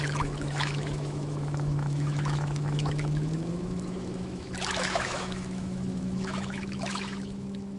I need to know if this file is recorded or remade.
remade